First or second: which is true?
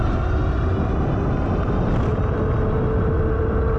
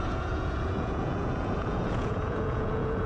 first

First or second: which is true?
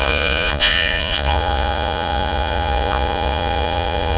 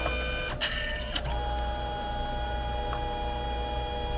second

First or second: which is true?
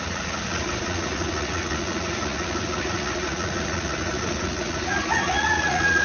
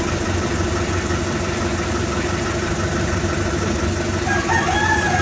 second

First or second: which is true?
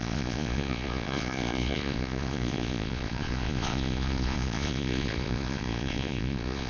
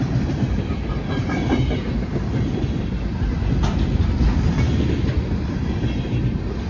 second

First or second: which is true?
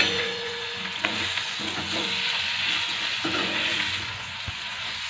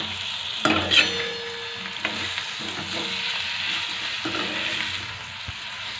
second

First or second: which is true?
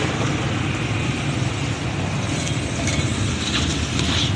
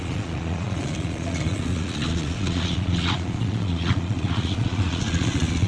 first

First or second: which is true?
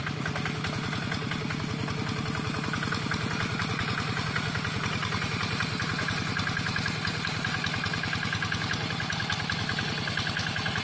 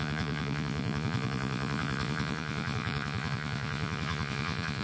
first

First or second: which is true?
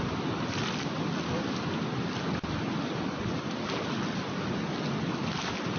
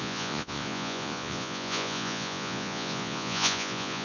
first